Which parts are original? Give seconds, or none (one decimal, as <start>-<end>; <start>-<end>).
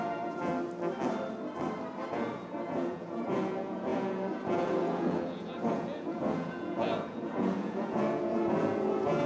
0.5-2.1